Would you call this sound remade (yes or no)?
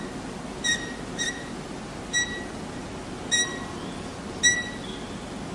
no